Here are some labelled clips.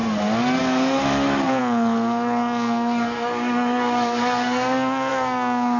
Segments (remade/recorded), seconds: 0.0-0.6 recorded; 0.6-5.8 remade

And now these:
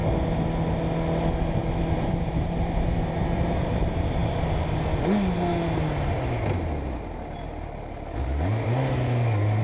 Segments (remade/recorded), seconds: 0.0-1.9 recorded; 1.9-4.2 remade; 4.2-9.6 recorded

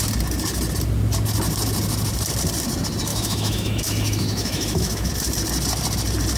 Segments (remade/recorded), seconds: 0.0-3.1 recorded; 3.1-5.1 remade; 5.1-6.4 recorded

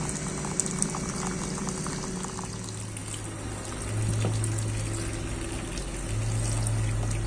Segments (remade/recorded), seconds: 0.0-7.3 recorded

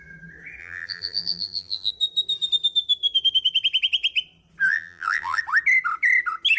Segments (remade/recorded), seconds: 0.0-0.6 recorded; 0.6-1.9 remade; 1.9-4.7 recorded; 4.7-5.4 remade; 5.4-6.6 recorded

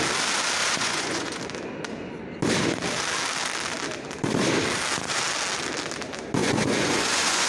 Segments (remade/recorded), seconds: 0.0-0.6 recorded; 0.6-1.4 remade; 1.4-6.4 recorded; 6.4-7.5 remade